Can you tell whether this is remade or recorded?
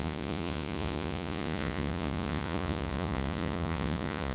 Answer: remade